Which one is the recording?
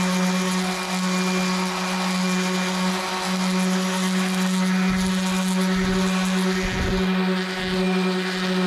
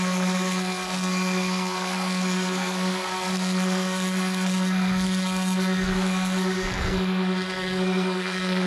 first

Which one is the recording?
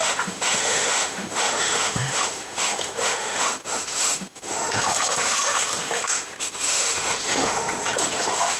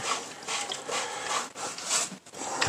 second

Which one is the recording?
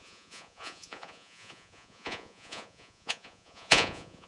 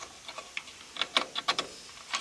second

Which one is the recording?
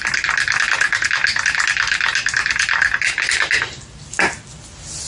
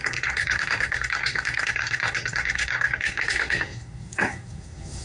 first